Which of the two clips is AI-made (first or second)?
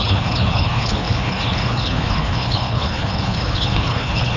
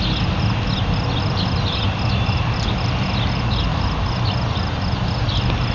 first